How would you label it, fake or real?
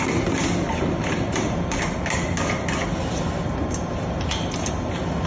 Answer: real